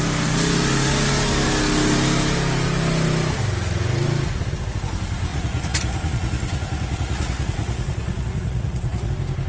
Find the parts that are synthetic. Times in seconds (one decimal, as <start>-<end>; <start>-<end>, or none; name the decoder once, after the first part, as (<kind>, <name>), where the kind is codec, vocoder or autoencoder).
5.3-9.1 (vocoder, Vocos)